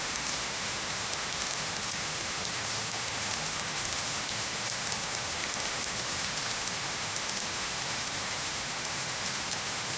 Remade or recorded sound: remade